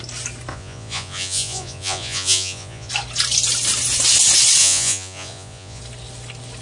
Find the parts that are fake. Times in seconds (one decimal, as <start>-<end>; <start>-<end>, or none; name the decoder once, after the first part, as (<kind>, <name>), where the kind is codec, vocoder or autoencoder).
0.5-2.9 (vocoder, Vocos); 4.6-5.8